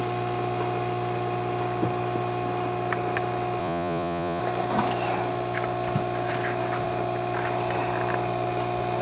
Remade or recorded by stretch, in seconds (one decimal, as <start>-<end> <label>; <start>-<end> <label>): 0.0-3.6 recorded; 3.6-4.4 remade; 4.4-9.0 recorded